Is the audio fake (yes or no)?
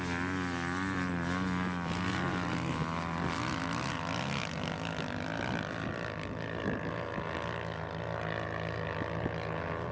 no